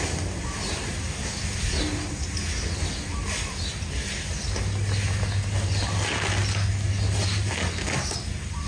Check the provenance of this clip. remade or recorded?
recorded